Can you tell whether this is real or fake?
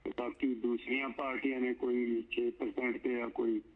real